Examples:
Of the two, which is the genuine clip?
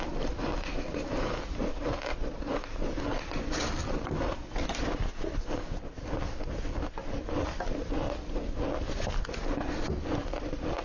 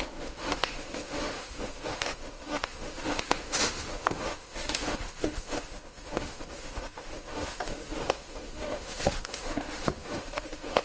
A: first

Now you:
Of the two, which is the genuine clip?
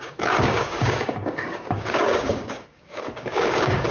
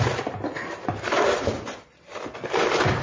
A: second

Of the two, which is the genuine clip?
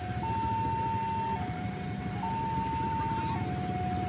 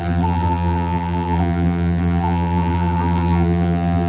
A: first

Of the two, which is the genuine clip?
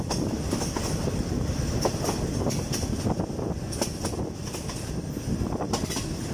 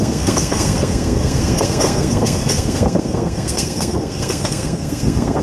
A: first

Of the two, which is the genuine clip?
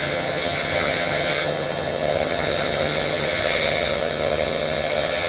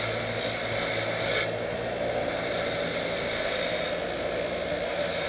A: second